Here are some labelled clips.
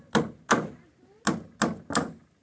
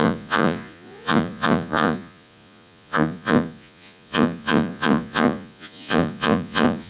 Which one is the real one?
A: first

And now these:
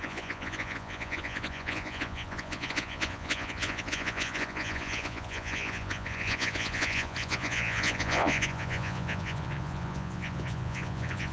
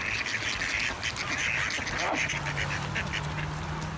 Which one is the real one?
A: second